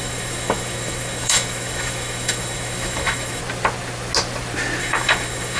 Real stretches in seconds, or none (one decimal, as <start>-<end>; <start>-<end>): 3.4-4.8